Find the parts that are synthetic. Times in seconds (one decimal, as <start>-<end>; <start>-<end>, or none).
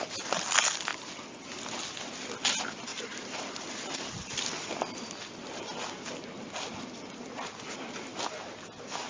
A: 0.9-1.5; 2.9-6.1; 8.1-9.1